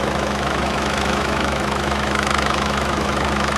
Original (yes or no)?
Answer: no